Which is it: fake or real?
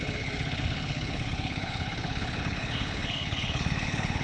fake